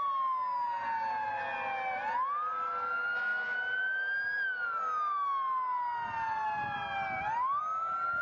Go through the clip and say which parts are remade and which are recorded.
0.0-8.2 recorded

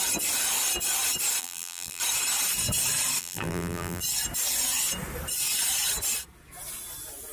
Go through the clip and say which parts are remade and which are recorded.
0.0-1.4 recorded; 1.4-2.0 remade; 2.0-3.2 recorded; 3.2-4.0 remade; 4.0-7.3 recorded

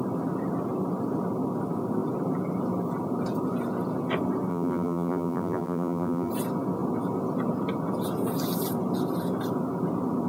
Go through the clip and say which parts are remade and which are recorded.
0.0-4.5 recorded; 4.5-6.3 remade; 6.3-10.3 recorded

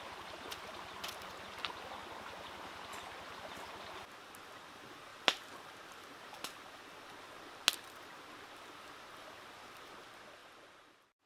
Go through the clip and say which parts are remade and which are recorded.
0.0-11.3 recorded

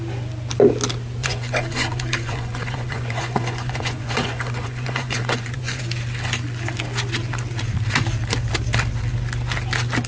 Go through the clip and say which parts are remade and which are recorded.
0.0-1.2 recorded; 1.2-5.8 remade; 5.8-10.1 recorded

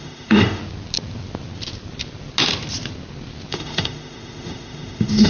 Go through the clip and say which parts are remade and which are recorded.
0.0-0.6 remade; 0.6-3.5 recorded; 3.5-5.3 remade

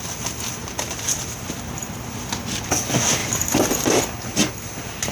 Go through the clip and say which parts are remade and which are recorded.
0.0-0.6 recorded; 0.6-2.7 remade; 2.7-3.2 recorded; 3.2-4.0 remade; 4.0-5.1 recorded

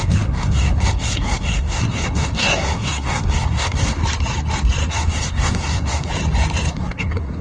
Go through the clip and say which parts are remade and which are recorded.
0.0-4.0 remade; 4.0-4.9 recorded; 4.9-6.1 remade; 6.1-6.7 recorded; 6.7-7.4 remade